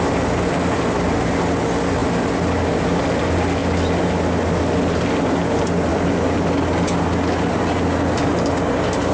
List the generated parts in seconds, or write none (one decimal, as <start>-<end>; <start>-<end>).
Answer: none